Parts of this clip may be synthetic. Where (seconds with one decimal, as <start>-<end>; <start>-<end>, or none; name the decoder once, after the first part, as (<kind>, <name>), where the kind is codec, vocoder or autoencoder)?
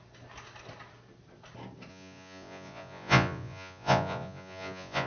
1.9-5.1 (vocoder, Vocos)